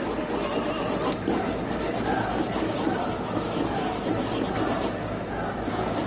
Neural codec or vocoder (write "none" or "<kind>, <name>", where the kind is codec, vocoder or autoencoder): none